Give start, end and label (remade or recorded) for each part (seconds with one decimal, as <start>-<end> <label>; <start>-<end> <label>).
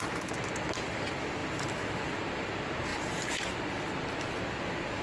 0.0-5.0 recorded